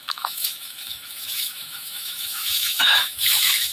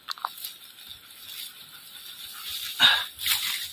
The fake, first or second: first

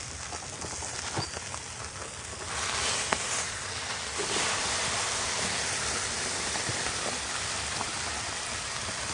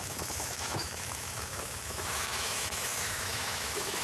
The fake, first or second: second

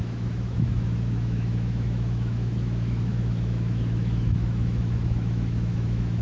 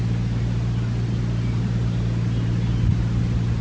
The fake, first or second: first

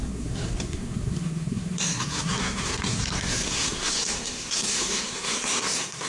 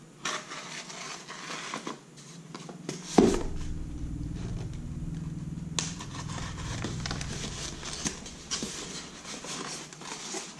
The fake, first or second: first